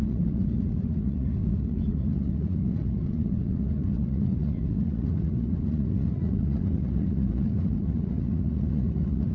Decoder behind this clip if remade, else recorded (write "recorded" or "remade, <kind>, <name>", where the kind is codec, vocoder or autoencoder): remade, vocoder, Vocos